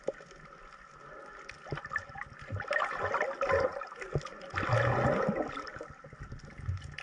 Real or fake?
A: real